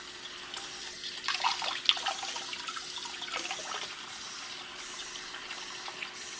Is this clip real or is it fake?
real